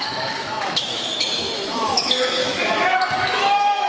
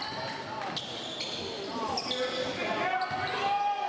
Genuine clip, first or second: second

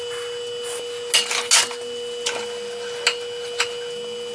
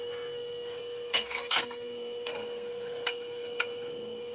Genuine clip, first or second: first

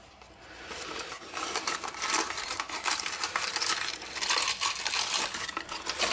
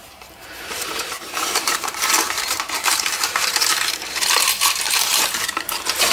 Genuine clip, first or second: first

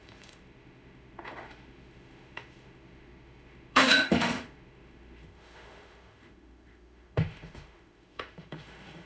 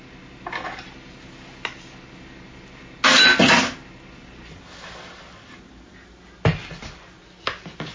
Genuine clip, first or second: second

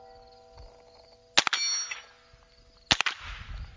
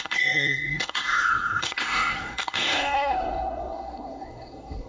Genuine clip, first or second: first